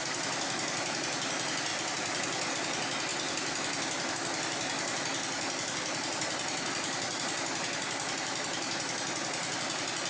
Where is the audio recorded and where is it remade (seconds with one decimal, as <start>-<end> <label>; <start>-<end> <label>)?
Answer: 0.0-1.7 recorded; 1.7-2.5 remade; 2.5-3.1 recorded; 3.1-4.1 remade; 4.1-10.1 recorded